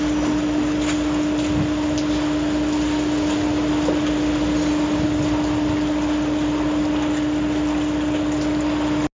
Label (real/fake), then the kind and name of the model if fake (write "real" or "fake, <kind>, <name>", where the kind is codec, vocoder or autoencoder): real